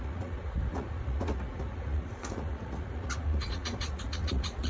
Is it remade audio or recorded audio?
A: remade